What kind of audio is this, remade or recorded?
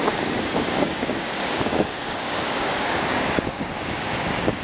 remade